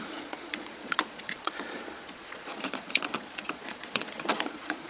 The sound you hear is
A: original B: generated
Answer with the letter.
B